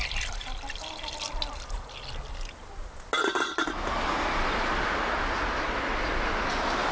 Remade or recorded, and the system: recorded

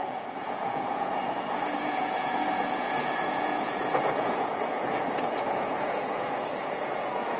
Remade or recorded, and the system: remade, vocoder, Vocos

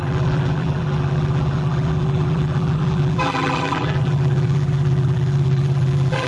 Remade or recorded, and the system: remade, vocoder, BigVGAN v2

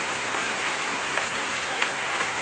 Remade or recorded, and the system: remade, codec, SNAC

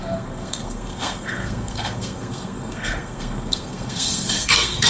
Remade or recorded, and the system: remade, codec, SNAC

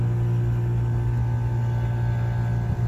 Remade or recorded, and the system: recorded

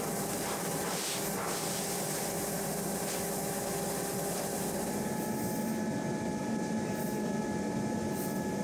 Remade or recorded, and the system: recorded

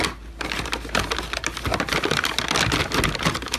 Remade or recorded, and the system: recorded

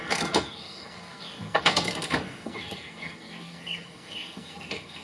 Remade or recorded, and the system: remade, codec, SNAC